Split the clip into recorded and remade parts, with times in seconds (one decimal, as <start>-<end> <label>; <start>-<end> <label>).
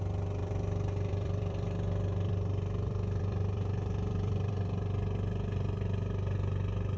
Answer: 0.0-0.4 recorded; 0.4-4.5 remade; 4.5-7.0 recorded